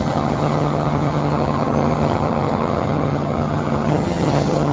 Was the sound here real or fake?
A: fake